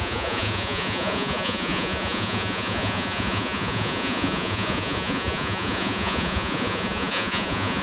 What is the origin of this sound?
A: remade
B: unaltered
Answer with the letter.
A